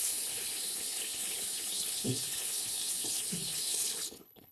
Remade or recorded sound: remade